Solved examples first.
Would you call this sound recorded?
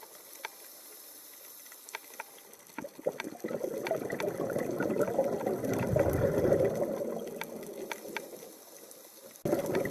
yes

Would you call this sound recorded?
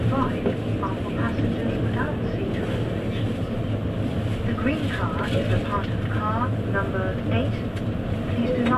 yes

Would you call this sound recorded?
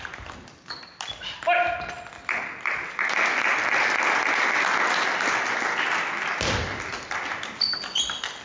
yes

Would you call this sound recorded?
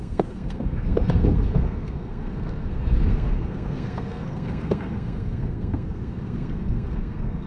no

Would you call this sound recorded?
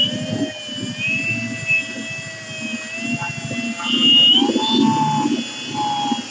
yes